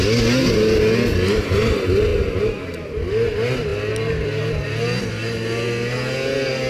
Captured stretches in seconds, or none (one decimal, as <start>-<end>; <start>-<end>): 0.0-6.7

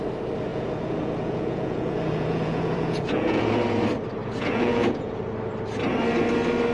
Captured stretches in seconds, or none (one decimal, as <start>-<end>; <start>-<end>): 0.0-0.5; 3.5-4.2; 5.2-6.7